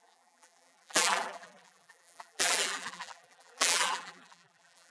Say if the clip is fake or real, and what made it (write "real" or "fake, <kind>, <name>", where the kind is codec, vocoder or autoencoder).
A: fake, vocoder, BigVGAN v2